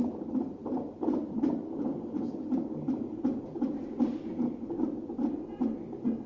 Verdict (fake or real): real